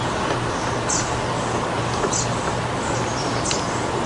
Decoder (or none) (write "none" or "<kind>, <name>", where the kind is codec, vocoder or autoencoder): none